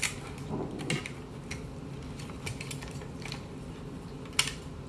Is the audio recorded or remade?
recorded